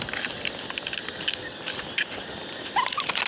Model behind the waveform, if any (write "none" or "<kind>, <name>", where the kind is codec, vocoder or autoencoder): none